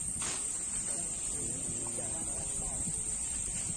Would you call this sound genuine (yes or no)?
yes